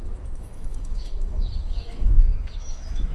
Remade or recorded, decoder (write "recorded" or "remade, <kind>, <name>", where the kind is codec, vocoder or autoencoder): remade, autoencoder, DAC-VAE